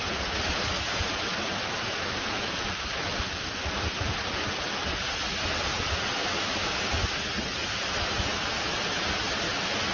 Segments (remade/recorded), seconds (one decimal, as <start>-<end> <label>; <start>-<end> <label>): 0.0-1.3 recorded; 1.3-2.5 remade; 2.5-6.2 recorded; 6.2-6.8 remade; 6.8-9.9 recorded